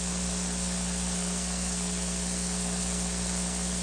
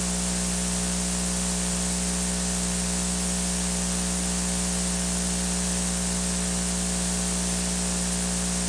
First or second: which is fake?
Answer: first